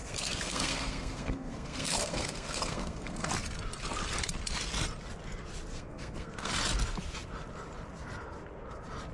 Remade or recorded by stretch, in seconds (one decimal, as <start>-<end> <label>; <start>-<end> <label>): 0.0-3.3 remade; 3.3-5.7 recorded; 5.7-6.5 remade; 6.5-9.1 recorded